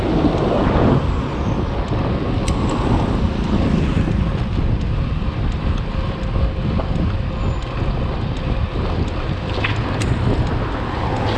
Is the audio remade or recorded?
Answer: recorded